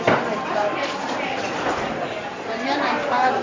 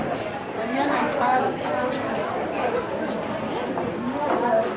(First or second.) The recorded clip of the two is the first